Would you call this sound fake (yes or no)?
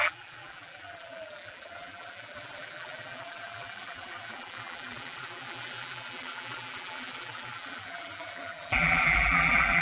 yes